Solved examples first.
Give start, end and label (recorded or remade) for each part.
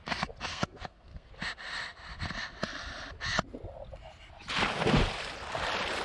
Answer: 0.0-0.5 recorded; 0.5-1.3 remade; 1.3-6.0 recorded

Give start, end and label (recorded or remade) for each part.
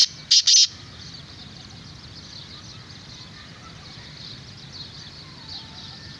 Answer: 0.0-6.2 recorded